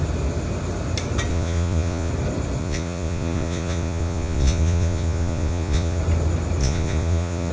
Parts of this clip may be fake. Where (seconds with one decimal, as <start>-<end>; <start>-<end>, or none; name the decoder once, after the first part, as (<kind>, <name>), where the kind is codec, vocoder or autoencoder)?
1.3-2.1 (vocoder, Vocos); 2.6-6.0; 6.6-7.5